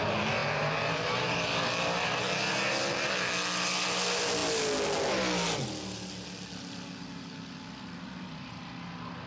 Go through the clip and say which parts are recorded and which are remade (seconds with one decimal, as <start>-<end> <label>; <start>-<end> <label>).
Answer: 0.0-9.3 recorded